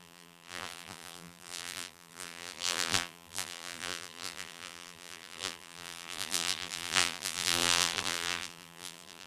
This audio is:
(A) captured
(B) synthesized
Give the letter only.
B